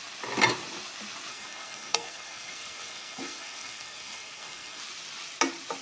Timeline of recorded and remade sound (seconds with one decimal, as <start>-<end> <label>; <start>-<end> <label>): 0.0-1.3 recorded; 1.3-4.8 remade; 4.8-5.8 recorded